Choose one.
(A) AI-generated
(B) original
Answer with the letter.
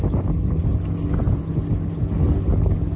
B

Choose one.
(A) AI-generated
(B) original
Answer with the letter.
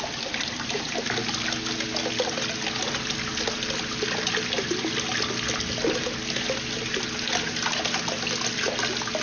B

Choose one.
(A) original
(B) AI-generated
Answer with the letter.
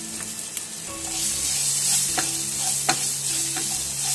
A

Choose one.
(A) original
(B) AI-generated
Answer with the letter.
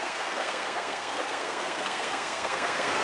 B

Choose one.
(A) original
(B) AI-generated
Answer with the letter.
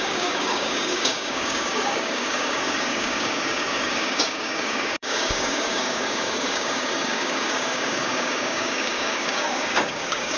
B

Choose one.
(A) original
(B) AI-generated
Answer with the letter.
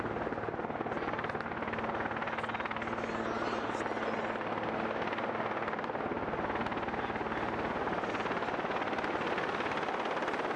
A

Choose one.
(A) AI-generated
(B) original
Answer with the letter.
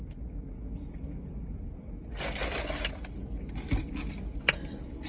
B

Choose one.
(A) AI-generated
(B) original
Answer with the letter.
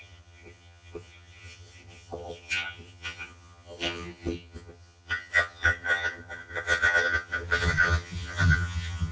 A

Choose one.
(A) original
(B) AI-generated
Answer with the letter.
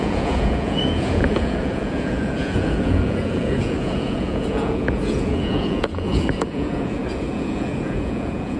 B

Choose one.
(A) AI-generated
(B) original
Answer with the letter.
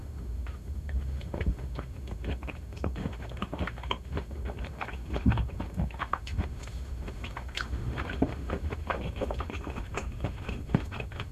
A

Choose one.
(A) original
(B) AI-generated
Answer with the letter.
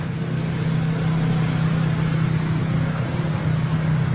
A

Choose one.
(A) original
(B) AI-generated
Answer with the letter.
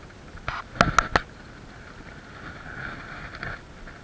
A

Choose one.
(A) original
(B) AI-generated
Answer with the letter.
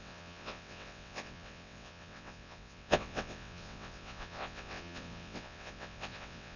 B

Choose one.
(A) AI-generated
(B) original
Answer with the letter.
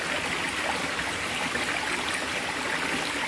B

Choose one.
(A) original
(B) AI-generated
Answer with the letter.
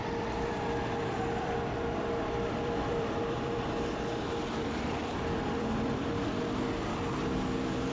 B